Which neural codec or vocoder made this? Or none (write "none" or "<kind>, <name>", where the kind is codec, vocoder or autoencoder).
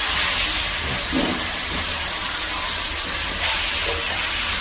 none